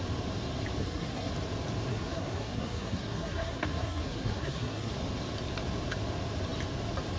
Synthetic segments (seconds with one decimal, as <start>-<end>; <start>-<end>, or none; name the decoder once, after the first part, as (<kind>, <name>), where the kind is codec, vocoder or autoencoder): 0.8-1.3 (codec, SNAC); 1.9-4.9